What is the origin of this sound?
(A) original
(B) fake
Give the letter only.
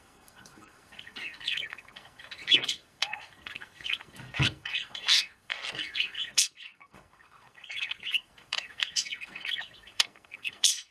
B